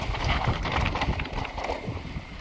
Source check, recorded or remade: recorded